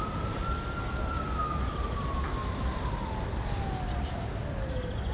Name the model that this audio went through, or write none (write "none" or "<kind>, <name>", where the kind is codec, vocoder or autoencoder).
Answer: none